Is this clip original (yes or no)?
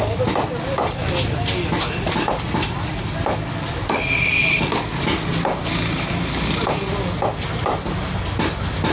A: yes